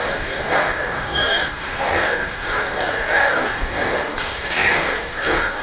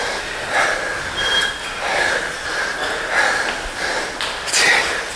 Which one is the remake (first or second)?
first